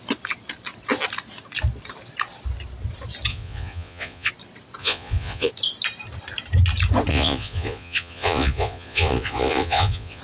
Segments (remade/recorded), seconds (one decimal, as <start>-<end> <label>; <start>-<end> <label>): 0.0-3.3 recorded; 3.3-4.3 remade; 4.3-4.8 recorded; 4.8-5.5 remade; 5.5-7.1 recorded; 7.1-10.2 remade